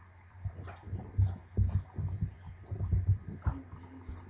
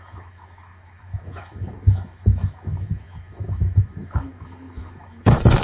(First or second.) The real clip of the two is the first